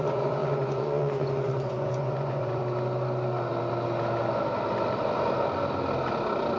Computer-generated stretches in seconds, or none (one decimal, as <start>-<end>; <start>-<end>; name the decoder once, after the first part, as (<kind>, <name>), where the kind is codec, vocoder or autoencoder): 0.0-2.6 (vocoder, Vocos)